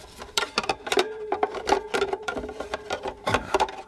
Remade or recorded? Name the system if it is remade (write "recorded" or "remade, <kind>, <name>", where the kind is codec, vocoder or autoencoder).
remade, vocoder, BigVGAN v2